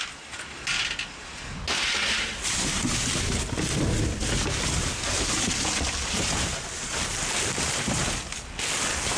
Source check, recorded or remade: recorded